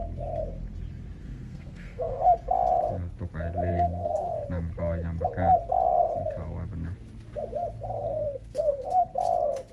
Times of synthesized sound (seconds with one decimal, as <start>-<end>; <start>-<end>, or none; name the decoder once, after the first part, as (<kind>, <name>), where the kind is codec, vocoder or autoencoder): 1.2-2.2 (codec, SNAC); 3.7-4.3; 8.0-9.1